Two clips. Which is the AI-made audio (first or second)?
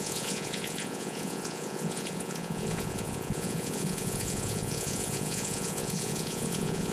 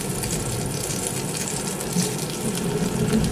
first